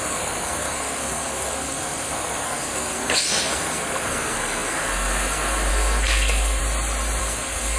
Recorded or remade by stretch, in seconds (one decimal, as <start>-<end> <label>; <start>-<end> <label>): 0.0-6.6 remade; 6.6-7.2 recorded; 7.2-7.8 remade